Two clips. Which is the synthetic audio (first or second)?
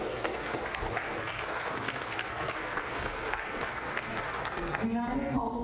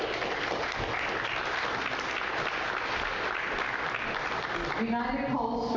first